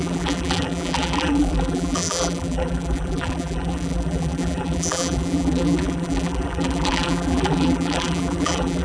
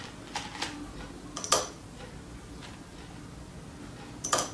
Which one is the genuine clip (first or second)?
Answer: second